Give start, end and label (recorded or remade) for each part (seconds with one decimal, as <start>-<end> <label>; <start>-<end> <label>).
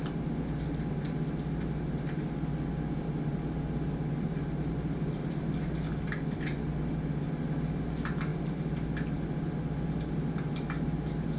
0.0-11.4 recorded